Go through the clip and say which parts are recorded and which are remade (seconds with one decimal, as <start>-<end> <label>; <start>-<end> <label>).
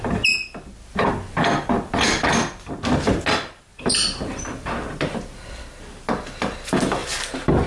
0.0-3.7 recorded; 3.7-5.5 remade; 5.5-7.0 recorded; 7.0-7.7 remade